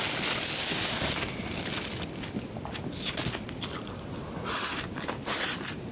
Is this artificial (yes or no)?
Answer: no